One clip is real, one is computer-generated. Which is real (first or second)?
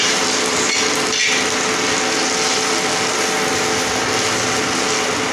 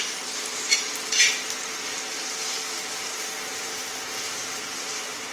first